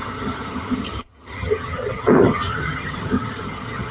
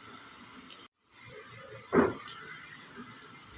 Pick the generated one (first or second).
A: first